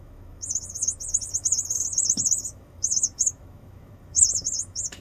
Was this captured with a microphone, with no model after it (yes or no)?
no